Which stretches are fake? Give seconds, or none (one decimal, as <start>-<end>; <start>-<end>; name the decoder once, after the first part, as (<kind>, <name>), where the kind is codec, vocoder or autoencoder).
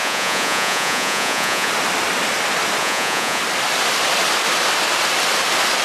0.0-1.7 (vocoder, Vocos); 2.8-3.4